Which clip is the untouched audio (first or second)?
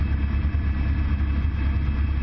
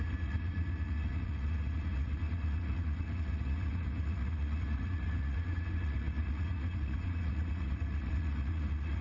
first